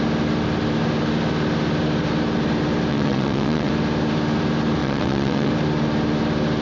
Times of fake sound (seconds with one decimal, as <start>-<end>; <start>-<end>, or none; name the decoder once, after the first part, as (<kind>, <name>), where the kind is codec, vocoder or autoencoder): 2.9-3.7 (vocoder, WaveNeXt); 4.8-5.5